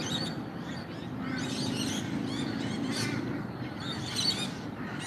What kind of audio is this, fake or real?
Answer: real